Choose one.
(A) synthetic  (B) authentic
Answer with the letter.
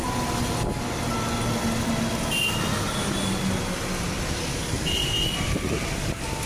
B